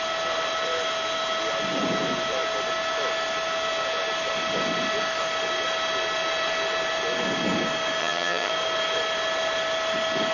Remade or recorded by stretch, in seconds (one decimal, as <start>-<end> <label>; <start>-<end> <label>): 0.0-8.0 recorded; 8.0-8.5 remade; 8.5-10.3 recorded